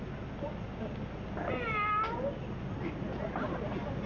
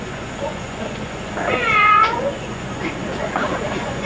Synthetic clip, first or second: second